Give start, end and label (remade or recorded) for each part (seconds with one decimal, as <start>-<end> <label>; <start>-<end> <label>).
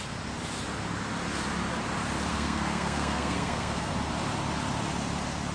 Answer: 0.0-2.3 recorded; 2.3-3.9 remade; 3.9-5.5 recorded